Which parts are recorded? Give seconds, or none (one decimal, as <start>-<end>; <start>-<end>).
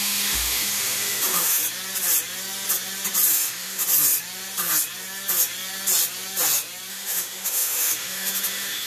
1.6-3.3; 3.8-6.9